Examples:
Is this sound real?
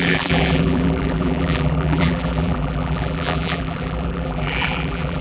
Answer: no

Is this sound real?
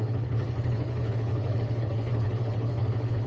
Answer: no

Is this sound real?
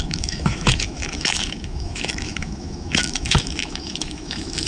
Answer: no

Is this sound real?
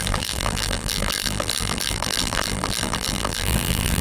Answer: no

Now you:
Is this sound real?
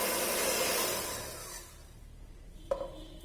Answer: yes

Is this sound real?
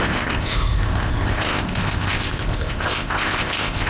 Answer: no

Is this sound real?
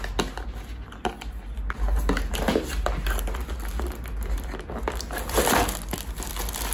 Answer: yes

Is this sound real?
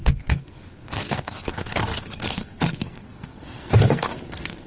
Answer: no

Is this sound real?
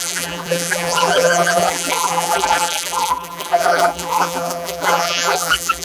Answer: no